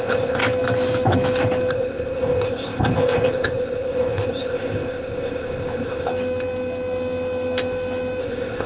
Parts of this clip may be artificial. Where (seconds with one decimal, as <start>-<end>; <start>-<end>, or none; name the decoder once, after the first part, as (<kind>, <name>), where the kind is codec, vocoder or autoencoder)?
0.0-0.4 (codec, ZipCodec); 1.7-6.1; 8.2-8.7

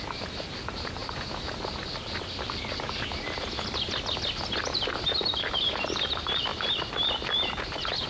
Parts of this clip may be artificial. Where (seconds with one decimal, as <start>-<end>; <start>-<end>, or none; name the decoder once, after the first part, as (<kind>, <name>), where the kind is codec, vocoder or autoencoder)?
none